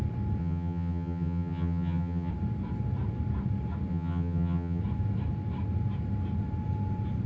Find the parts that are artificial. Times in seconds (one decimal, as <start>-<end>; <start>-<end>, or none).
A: 0.4-2.3; 3.9-4.8